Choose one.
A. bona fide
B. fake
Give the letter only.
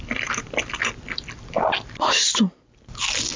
A